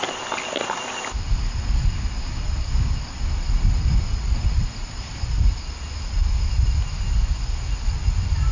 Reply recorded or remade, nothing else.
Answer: recorded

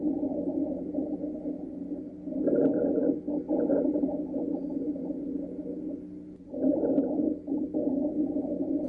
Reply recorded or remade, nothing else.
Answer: recorded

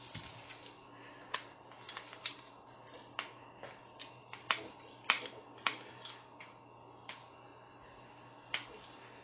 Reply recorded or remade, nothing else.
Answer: recorded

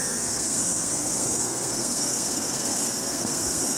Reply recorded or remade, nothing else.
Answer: remade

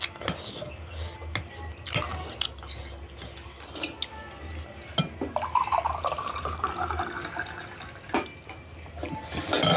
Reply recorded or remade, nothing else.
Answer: recorded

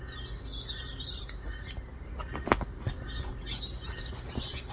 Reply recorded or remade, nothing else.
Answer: recorded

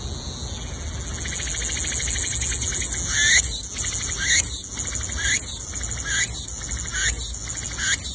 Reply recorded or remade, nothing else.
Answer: recorded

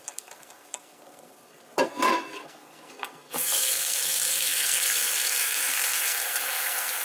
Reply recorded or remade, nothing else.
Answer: remade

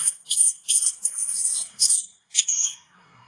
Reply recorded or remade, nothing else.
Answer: remade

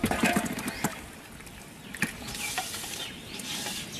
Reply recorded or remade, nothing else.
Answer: recorded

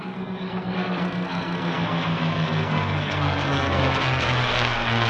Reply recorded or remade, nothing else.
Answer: remade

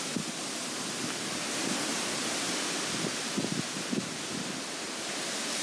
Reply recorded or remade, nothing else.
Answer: recorded